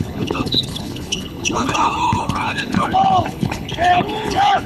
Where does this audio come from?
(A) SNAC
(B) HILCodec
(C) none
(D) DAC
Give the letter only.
B